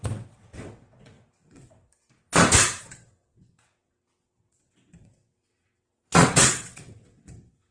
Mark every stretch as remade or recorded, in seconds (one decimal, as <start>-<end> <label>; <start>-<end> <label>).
0.0-1.9 remade; 1.9-2.8 recorded; 2.8-7.7 remade